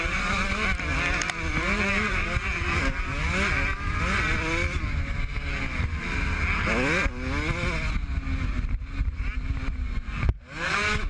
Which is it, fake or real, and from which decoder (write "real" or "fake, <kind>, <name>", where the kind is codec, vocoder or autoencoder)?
real